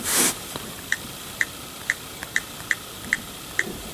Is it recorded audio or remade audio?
remade